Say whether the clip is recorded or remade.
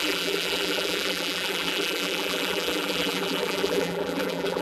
remade